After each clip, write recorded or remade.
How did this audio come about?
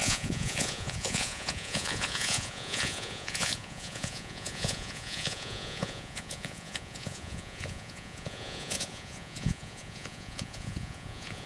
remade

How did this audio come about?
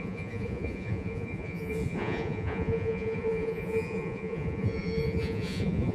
remade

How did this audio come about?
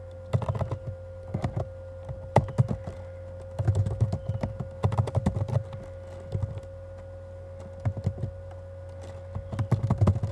recorded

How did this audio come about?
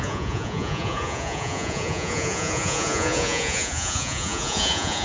remade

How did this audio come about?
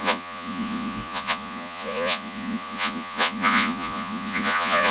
remade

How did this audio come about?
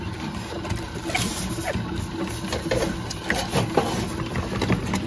recorded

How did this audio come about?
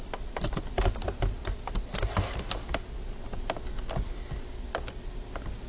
recorded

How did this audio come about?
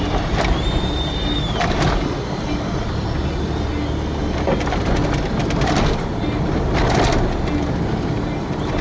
recorded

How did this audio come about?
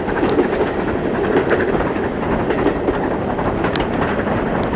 recorded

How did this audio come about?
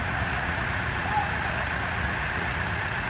remade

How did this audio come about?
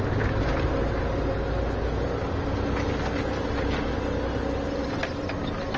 recorded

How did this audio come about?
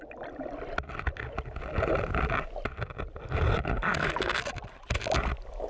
recorded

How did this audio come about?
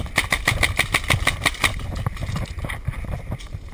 recorded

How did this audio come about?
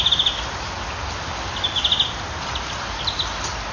recorded